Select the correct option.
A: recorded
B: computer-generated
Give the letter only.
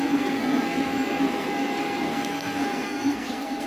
B